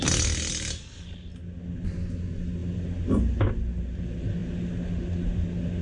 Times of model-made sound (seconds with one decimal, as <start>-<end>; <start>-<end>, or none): none